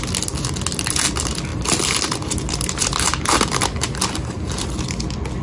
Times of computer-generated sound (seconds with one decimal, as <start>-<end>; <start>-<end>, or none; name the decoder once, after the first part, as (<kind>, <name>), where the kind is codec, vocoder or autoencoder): 1.5-4.7 (vocoder, BigVGAN v2)